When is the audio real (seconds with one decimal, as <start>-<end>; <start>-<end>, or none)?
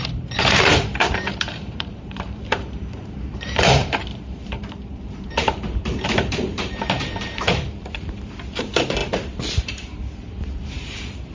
none